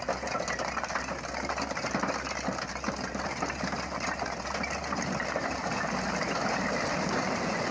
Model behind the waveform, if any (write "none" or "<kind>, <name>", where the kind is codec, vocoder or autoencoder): none